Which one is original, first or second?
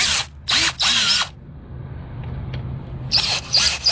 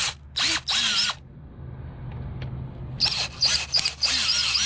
second